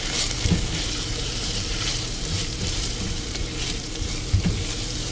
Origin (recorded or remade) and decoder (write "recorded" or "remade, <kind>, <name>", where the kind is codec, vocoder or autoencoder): remade, vocoder, BigVGAN v2